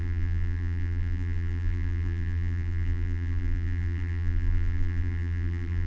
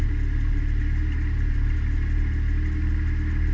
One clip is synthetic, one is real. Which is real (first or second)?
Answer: second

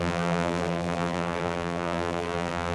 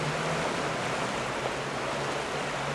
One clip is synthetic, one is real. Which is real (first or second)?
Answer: second